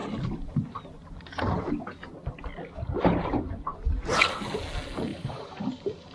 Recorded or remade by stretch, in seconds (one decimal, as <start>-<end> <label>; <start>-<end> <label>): 0.0-5.1 recorded; 5.1-6.1 remade